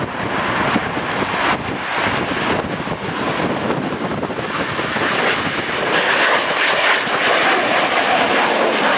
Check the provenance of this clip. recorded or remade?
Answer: recorded